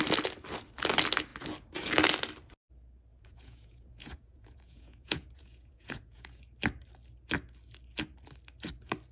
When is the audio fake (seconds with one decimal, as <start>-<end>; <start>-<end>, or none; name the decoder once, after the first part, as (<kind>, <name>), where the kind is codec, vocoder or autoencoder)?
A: 3.1-6.4 (vocoder, Vocos)